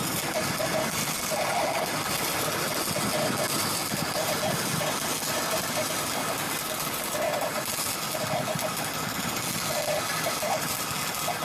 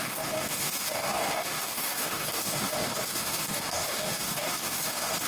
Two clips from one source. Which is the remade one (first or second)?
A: second